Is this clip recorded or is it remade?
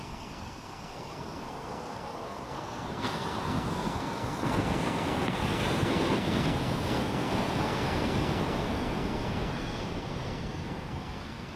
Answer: remade